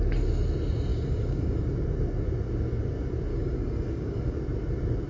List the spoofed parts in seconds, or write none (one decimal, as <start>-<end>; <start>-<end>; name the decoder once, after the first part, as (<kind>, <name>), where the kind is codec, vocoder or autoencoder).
0.9-1.6 (codec, DAC); 3.3-4.4